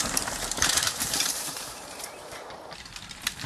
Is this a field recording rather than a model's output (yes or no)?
no